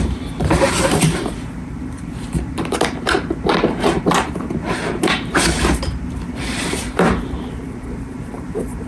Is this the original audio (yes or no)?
no